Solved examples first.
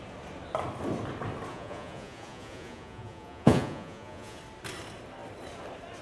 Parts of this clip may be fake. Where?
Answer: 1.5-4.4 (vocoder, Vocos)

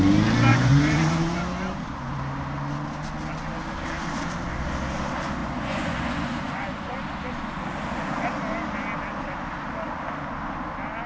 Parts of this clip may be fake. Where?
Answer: 0.5-1.4 (vocoder, Vocos); 5.4-7.0

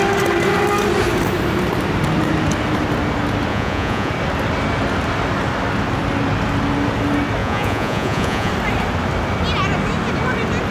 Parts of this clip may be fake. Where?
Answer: 3.5-4.1 (vocoder, Vocos); 7.4-8.5

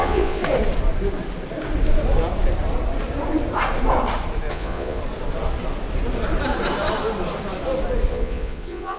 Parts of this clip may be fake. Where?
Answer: 0.0-0.4 (vocoder, Vocos); 4.5-5.0; 8.1-9.0